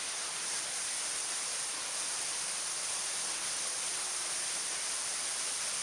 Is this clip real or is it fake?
real